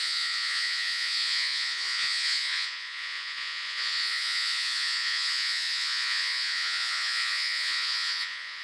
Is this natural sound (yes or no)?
no